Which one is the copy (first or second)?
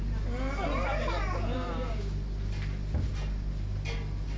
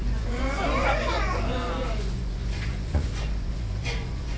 second